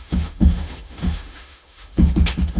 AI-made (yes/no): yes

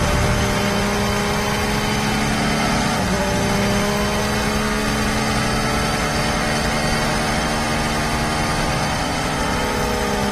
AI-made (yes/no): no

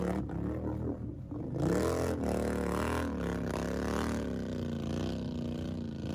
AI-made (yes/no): no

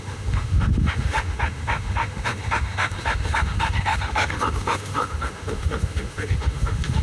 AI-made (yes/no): yes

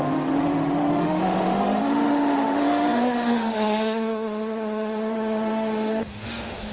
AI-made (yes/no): yes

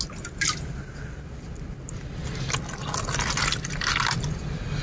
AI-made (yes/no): no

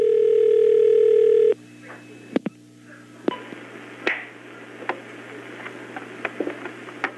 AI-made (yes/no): no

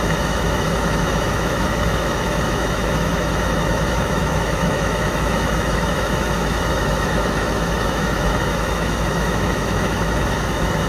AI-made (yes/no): yes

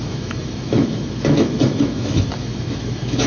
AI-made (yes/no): yes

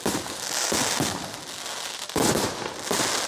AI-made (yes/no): no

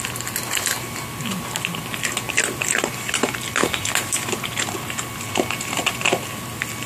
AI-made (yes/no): no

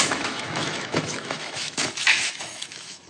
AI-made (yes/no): yes